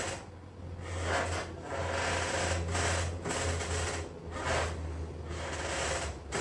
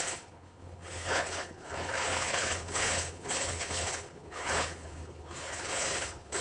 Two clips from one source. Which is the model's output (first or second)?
second